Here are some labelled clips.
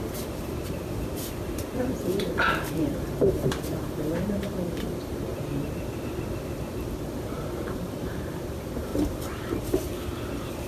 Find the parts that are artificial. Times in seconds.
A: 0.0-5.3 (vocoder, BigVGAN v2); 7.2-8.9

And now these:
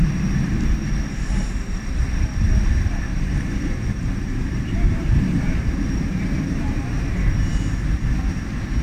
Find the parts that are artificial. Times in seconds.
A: 3.1-7.3 (vocoder, BigVGAN v2)

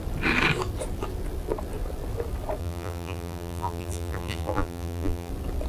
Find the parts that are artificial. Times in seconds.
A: 2.6-5.3 (vocoder, BigVGAN v2)

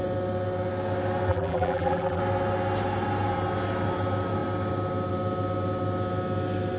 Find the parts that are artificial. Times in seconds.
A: 1.3-2.2 (vocoder, BigVGAN v2)

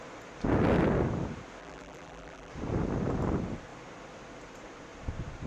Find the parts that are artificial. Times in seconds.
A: 1.6-2.5 (vocoder, BigVGAN v2)

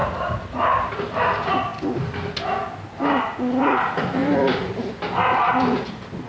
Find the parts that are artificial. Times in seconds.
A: 0.0-0.9 (vocoder, BigVGAN v2); 4.2-5.0